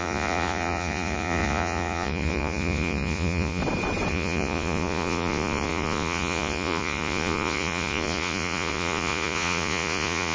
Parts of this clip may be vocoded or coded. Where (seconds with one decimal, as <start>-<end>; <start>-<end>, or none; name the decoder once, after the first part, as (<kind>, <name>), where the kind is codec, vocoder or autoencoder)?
0.0-3.6 (vocoder, Vocos); 4.1-10.3